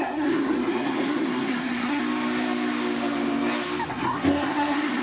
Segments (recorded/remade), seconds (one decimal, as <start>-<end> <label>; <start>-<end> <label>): 0.0-2.0 remade; 2.0-3.9 recorded; 3.9-5.0 remade